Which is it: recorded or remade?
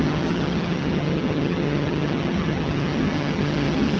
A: remade